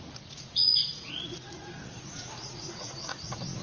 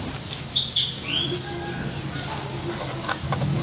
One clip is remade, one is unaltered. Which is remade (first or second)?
first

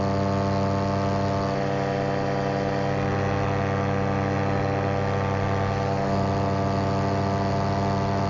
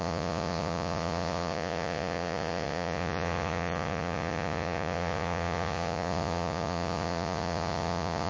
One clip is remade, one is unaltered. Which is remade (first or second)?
second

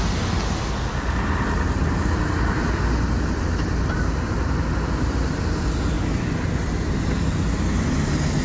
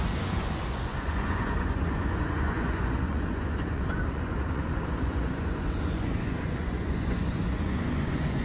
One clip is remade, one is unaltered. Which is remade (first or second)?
second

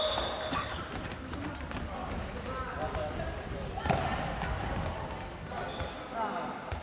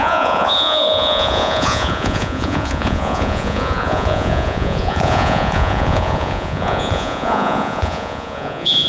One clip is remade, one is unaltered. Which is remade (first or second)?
second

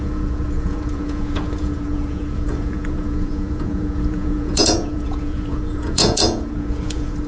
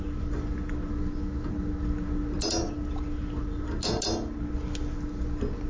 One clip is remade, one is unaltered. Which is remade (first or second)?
first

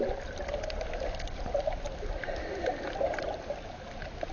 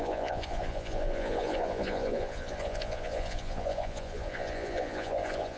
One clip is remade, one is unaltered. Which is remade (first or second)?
second